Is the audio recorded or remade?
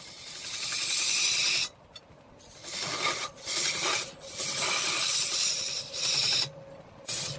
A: recorded